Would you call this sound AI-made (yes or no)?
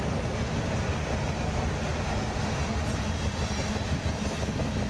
no